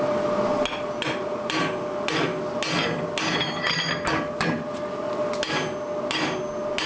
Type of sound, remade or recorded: recorded